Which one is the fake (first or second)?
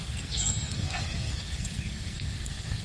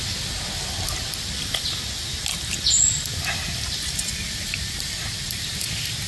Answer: first